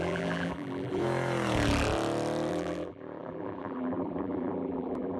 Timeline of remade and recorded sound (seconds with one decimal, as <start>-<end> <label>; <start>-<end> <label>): 0.0-1.0 remade; 1.0-2.5 recorded; 2.5-5.2 remade